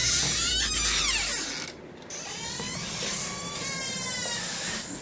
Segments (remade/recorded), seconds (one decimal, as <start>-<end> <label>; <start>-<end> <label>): 0.0-5.0 recorded